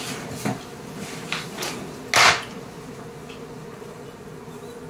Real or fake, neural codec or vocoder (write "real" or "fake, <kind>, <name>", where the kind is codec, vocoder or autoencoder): real